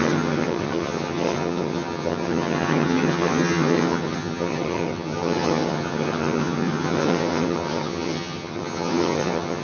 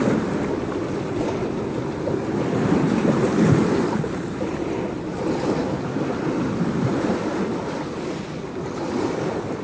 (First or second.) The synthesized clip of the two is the first